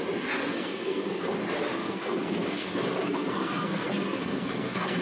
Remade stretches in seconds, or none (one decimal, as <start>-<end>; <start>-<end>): 0.5-1.2; 1.8-5.0